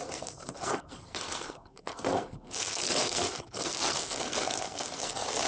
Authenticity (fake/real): fake